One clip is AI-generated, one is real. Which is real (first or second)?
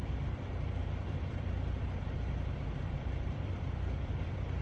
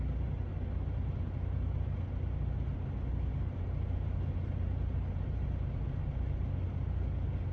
second